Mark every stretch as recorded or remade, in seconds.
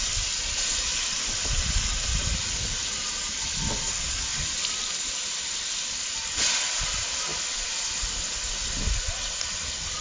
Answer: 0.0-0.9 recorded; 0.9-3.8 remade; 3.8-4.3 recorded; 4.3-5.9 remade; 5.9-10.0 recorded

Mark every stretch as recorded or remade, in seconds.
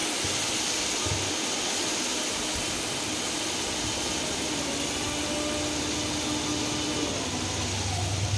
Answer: 0.0-8.4 recorded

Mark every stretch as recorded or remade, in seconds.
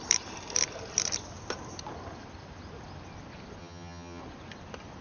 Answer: 0.0-3.6 recorded; 3.6-4.2 remade; 4.2-5.0 recorded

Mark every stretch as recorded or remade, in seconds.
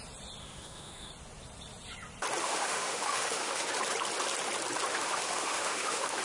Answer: 0.0-0.4 recorded; 0.4-1.1 remade; 1.1-2.4 recorded; 2.4-3.7 remade; 3.7-4.9 recorded; 4.9-6.2 remade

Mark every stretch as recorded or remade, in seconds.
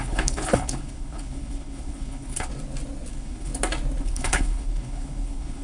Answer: 0.0-2.5 remade; 2.5-3.1 recorded; 3.1-3.5 remade; 3.5-4.0 recorded; 4.0-5.6 remade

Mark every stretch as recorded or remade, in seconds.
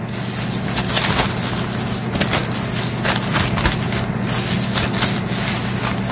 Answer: 0.0-6.1 recorded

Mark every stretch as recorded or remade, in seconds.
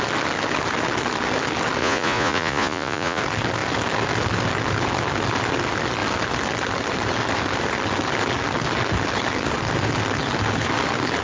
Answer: 0.0-1.8 recorded; 1.8-3.2 remade; 3.2-11.2 recorded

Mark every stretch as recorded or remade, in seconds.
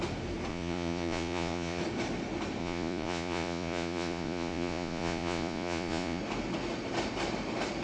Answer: 0.0-0.5 recorded; 0.5-1.8 remade; 1.8-2.6 recorded; 2.6-6.2 remade; 6.2-7.8 recorded